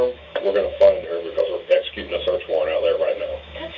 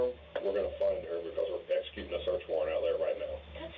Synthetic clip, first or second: first